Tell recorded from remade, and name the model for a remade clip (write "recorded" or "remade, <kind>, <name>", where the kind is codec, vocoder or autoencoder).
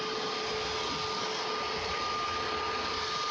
recorded